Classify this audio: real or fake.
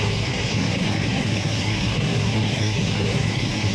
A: fake